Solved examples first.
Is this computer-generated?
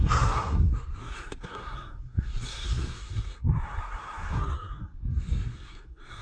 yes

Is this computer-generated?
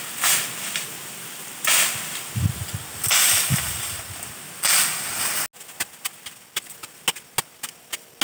no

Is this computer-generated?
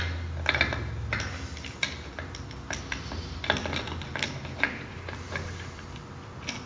no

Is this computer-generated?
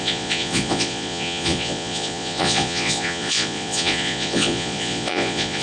yes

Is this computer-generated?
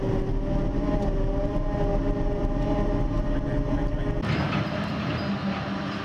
no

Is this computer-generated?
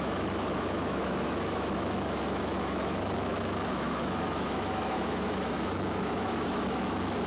yes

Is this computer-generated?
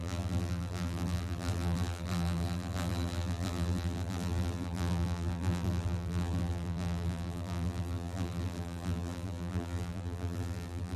yes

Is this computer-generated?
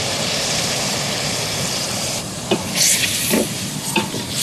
yes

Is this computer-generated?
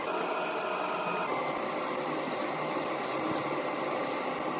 no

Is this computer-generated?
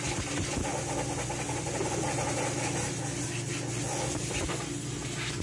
no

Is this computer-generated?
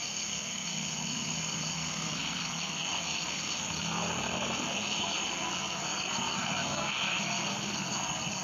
yes